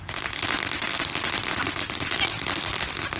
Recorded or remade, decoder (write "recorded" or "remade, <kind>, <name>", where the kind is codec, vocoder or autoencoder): recorded